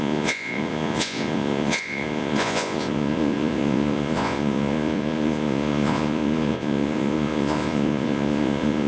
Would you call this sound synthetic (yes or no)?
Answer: yes